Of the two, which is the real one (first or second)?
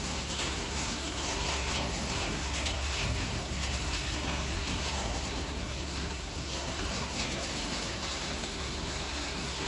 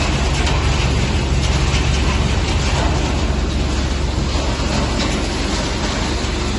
second